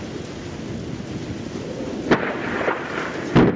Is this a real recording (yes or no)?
yes